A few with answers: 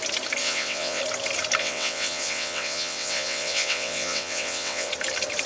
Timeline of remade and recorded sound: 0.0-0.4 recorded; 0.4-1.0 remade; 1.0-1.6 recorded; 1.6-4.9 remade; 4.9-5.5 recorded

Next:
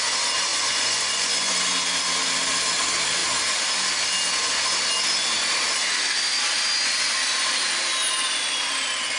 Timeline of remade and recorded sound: 0.0-0.5 recorded; 0.5-1.5 remade; 1.5-9.2 recorded

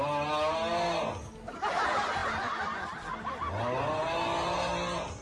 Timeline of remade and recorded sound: 0.0-5.2 recorded

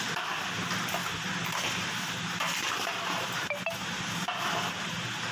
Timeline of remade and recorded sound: 0.0-2.6 recorded; 2.6-5.3 remade

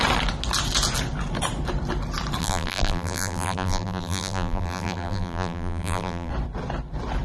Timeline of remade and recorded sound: 0.0-2.4 recorded; 2.4-6.3 remade; 6.3-7.2 recorded

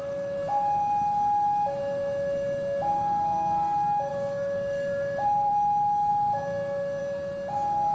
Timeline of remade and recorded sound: 0.0-4.1 recorded; 4.1-5.5 remade; 5.5-7.9 recorded